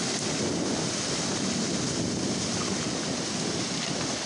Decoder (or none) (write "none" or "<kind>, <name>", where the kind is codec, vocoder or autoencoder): none